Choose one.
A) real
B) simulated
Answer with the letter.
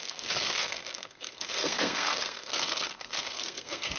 B